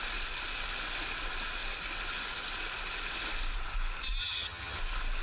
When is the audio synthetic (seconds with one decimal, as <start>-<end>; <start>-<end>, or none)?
4.2-4.8